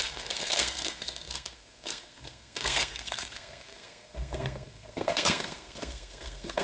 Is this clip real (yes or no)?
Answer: no